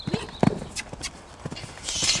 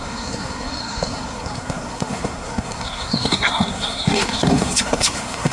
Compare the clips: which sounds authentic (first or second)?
first